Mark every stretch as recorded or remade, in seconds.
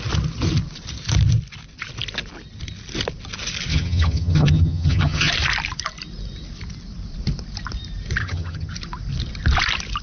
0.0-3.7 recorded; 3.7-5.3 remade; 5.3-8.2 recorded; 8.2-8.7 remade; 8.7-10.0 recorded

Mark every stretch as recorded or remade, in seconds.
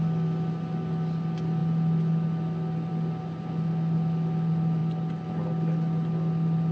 0.0-6.7 recorded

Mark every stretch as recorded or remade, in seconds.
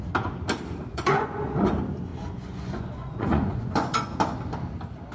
0.0-0.9 recorded; 0.9-1.7 remade; 1.7-2.1 recorded; 2.1-4.1 remade; 4.1-5.1 recorded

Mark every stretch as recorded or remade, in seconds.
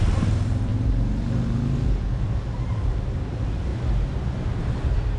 0.0-0.7 remade; 0.7-2.4 recorded; 2.4-3.7 remade; 3.7-5.2 recorded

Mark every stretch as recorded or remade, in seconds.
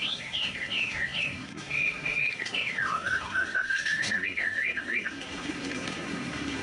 0.0-6.6 remade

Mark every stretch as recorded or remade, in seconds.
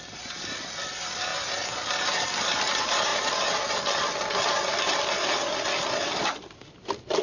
0.0-1.3 remade; 1.3-2.6 recorded; 2.6-7.2 remade